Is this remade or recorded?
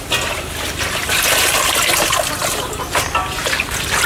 recorded